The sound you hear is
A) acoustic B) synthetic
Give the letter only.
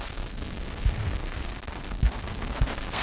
B